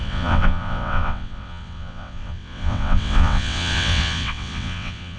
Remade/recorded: remade